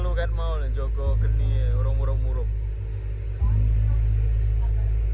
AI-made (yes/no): no